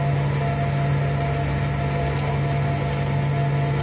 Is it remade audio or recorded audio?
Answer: recorded